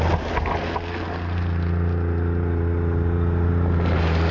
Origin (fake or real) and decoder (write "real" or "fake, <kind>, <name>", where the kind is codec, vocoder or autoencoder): real